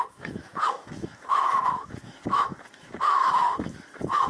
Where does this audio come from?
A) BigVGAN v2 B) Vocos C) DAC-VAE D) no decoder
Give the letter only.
C